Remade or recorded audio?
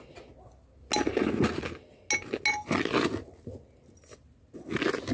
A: recorded